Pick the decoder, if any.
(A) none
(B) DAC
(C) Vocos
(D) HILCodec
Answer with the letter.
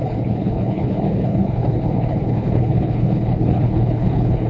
D